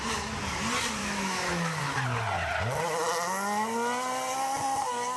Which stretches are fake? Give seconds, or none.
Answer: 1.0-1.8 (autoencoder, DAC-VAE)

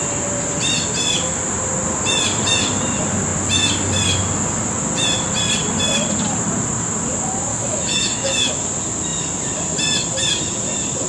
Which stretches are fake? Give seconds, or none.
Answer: 7.5-8.5 (autoencoder, DAC-VAE)

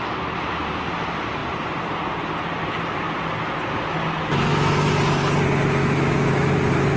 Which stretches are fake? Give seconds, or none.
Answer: 4.0-4.6 (autoencoder, DAC-VAE); 5.8-6.5

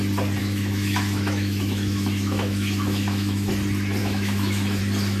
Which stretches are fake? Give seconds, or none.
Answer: 0.4-3.5 (autoencoder, DAC-VAE); 4.0-4.8